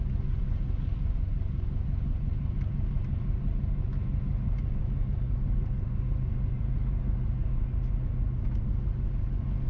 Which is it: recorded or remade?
recorded